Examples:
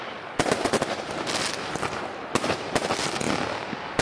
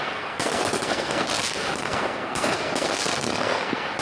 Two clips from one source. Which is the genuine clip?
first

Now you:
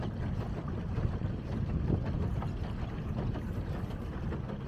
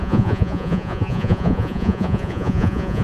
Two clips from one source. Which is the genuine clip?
first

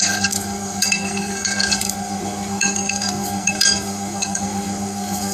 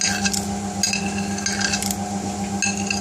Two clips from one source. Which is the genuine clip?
second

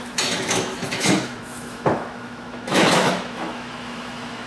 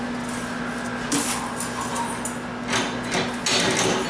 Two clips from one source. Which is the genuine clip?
second